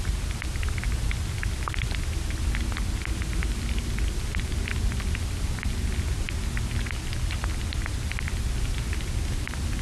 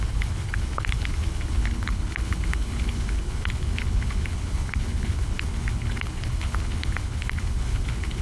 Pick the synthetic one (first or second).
second